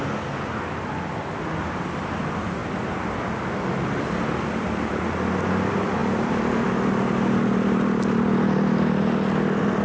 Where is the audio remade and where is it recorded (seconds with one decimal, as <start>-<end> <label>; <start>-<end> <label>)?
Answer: 0.0-9.8 recorded